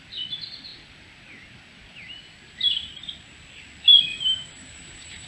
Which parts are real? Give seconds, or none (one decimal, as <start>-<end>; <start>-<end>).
0.0-4.1